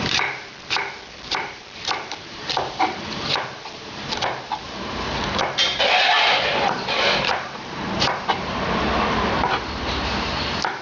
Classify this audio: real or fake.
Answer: fake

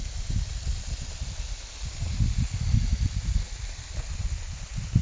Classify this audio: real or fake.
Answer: real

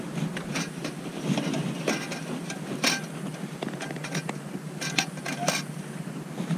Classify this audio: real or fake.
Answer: real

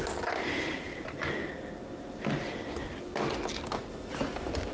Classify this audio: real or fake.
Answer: real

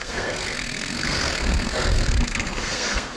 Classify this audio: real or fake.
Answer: fake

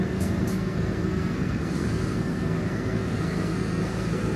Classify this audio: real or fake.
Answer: fake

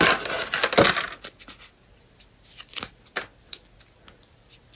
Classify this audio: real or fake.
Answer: real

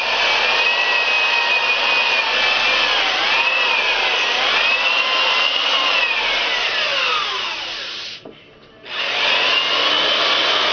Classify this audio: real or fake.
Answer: real